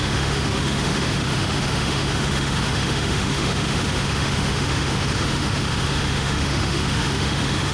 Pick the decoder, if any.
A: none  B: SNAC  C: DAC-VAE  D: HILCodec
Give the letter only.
C